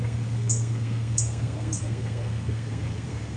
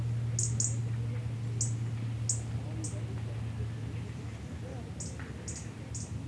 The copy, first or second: first